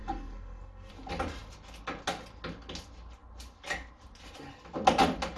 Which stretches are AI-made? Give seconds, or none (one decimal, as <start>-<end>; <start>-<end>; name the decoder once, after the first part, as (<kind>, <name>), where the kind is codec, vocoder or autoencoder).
0.0-0.9 (codec, SNAC)